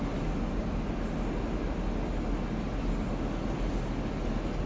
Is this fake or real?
real